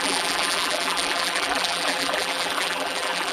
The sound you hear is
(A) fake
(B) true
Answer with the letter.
A